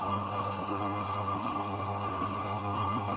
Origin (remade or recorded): remade